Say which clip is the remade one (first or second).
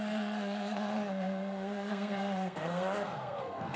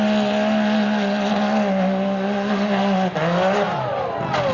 first